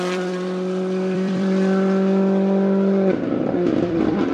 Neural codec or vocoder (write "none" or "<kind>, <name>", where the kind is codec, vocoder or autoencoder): vocoder, BigVGAN v2